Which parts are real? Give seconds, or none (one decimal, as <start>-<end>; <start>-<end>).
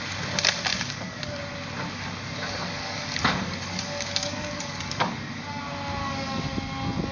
0.0-0.7; 1.4-2.6; 5.6-6.0; 6.5-7.1